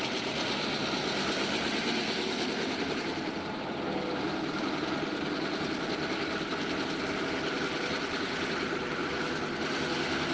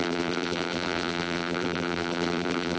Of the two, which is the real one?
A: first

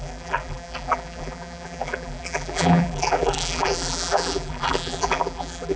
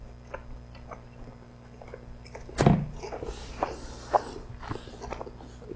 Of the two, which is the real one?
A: second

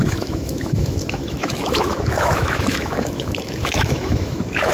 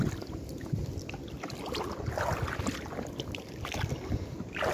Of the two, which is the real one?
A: second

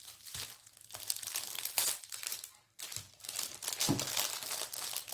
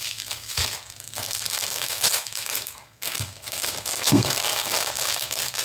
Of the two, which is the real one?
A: first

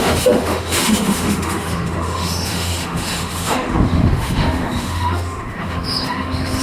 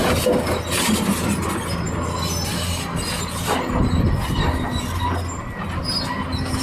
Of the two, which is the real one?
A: second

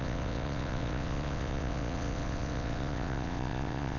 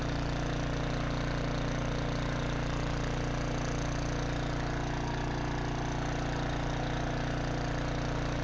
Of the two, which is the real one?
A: second